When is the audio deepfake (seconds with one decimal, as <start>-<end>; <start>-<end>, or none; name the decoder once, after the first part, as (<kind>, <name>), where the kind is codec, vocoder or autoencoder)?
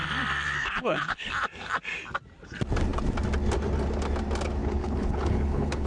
0.6-1.3 (codec, HILCodec); 4.6-5.9